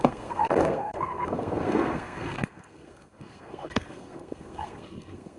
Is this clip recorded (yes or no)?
no